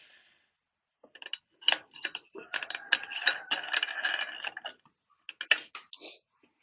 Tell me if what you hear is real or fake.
real